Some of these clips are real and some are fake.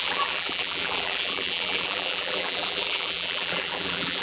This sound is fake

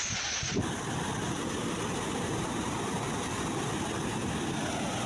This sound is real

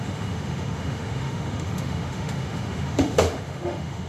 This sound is fake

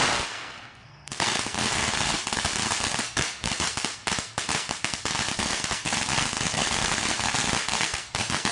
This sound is fake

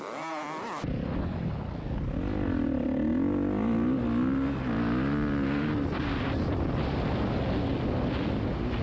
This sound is real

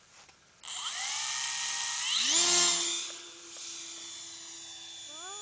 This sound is real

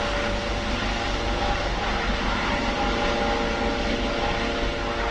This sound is real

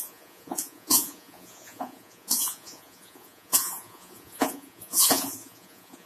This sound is fake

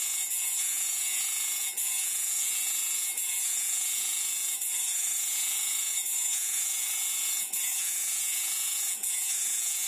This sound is fake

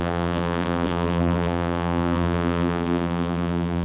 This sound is fake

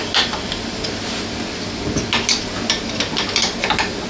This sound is real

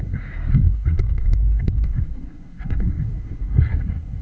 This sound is fake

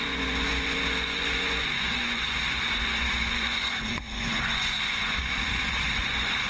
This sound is fake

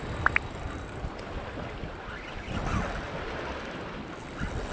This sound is real